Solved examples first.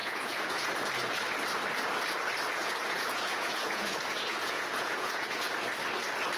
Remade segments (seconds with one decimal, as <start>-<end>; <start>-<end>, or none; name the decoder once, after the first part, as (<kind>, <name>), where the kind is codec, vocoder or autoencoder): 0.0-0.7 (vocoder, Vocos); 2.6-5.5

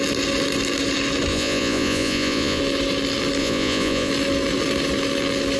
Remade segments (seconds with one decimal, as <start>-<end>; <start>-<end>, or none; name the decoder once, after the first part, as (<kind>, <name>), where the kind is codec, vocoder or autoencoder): 1.3-2.6 (vocoder, Vocos); 3.4-4.1

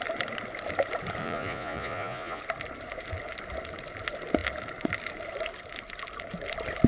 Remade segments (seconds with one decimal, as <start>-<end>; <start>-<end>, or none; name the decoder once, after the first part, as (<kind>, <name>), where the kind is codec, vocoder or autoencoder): 1.2-2.4 (vocoder, Vocos)